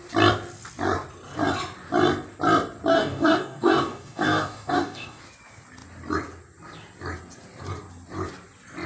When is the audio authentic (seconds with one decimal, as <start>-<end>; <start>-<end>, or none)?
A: 0.0-2.9; 5.2-8.9